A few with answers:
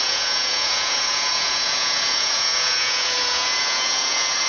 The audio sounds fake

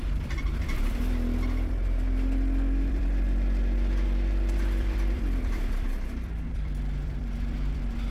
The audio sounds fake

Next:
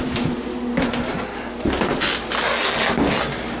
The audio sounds real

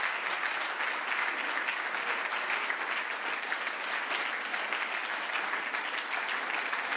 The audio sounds real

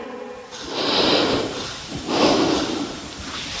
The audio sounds real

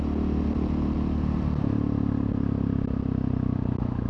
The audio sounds real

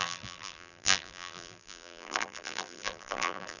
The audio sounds fake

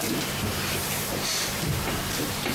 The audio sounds fake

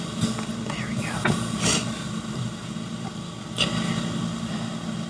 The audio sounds real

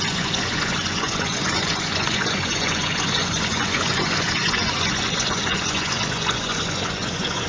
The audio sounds fake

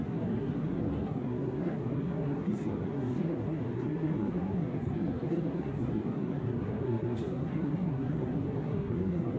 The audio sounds fake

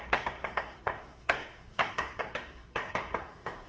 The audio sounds fake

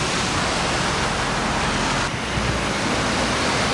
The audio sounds real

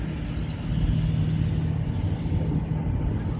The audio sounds real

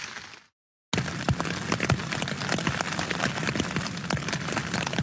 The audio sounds real